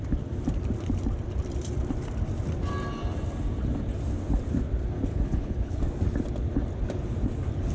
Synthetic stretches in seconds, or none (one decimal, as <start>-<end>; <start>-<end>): 5.0-5.8